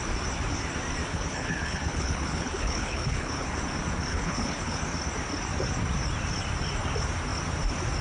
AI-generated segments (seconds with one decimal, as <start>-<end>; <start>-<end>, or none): 1.1-3.6; 4.1-4.8